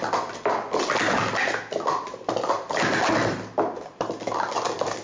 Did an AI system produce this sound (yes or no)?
no